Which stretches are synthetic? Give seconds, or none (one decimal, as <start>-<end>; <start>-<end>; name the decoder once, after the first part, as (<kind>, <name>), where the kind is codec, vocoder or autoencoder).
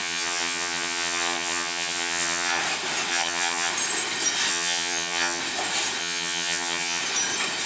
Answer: 0.0-2.6 (vocoder, HiFi-GAN); 3.1-3.7; 4.5-5.4; 6.0-7.0